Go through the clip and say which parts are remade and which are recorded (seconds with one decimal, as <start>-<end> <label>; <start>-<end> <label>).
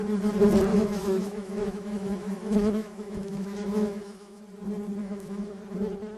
0.0-0.7 recorded; 0.7-4.4 remade; 4.4-5.0 recorded; 5.0-5.6 remade; 5.6-6.2 recorded